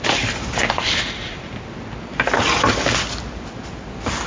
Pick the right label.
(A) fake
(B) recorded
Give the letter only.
B